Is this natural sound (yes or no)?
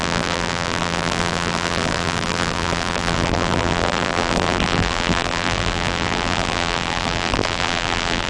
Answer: no